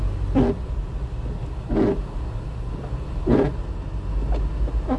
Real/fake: real